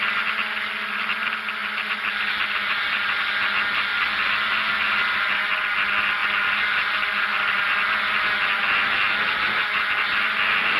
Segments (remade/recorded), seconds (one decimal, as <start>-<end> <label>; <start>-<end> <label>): 0.0-10.8 recorded